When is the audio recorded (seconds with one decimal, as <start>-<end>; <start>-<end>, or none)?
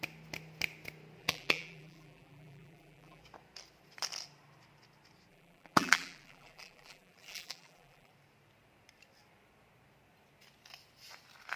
0.0-1.2; 3.2-5.3; 8.1-11.6